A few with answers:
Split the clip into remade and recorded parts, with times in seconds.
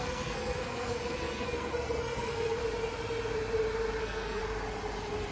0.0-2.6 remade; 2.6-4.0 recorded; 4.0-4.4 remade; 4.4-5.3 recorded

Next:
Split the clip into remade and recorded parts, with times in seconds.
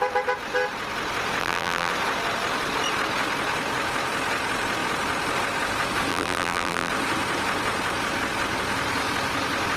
0.0-1.4 recorded; 1.4-1.9 remade; 1.9-6.1 recorded; 6.1-6.9 remade; 6.9-9.8 recorded